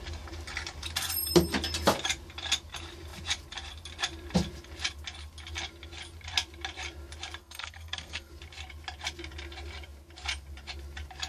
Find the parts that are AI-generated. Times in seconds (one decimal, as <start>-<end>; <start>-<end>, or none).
7.4-8.3